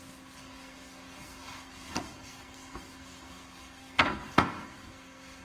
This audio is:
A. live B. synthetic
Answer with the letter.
B